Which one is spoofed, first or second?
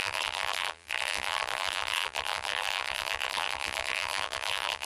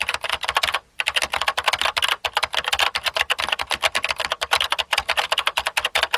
first